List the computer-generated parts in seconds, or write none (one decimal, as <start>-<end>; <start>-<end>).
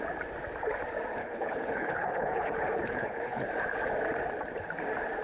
1.2-3.5